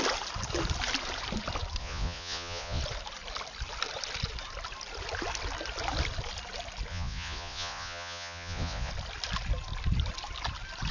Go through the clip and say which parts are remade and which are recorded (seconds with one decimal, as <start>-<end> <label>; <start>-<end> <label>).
0.0-1.8 recorded; 1.8-2.8 remade; 2.8-6.9 recorded; 6.9-8.9 remade; 8.9-10.9 recorded

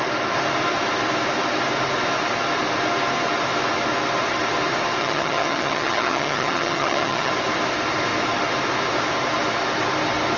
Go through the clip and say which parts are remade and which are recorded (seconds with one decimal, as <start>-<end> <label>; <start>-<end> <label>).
0.0-5.0 recorded; 5.0-7.3 remade; 7.3-10.4 recorded

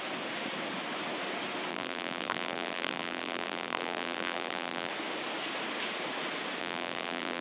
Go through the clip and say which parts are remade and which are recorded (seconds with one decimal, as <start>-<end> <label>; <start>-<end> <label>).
0.0-1.7 recorded; 1.7-4.9 remade; 4.9-6.6 recorded; 6.6-7.4 remade

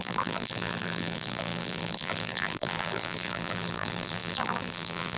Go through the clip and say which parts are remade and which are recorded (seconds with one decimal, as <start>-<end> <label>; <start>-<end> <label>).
0.0-5.2 remade

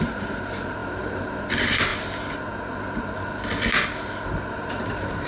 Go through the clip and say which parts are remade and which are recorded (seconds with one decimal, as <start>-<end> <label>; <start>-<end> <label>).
0.0-0.8 remade; 0.8-1.5 recorded; 1.5-1.9 remade; 1.9-4.6 recorded; 4.6-5.3 remade

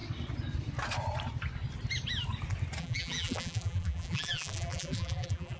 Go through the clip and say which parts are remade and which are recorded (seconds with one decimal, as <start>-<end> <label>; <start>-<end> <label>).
0.0-2.8 recorded; 2.8-5.6 remade

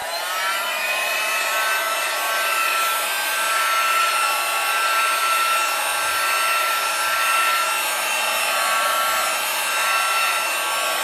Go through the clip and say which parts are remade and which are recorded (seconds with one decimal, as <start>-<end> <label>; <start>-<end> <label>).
0.0-11.0 recorded

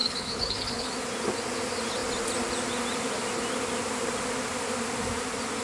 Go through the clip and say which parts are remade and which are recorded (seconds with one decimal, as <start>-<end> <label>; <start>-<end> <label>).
0.0-0.9 remade; 0.9-5.6 recorded